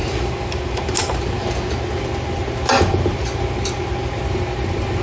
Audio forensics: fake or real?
real